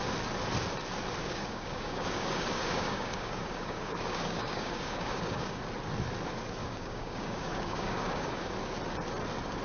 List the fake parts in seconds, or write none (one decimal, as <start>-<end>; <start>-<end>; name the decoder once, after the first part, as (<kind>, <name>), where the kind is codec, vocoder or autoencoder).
1.2-5.6 (codec, DAC); 6.6-8.5